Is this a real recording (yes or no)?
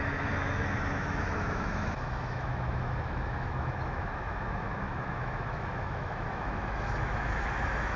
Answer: no